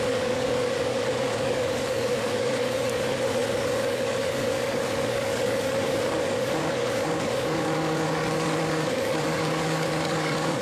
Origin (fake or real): fake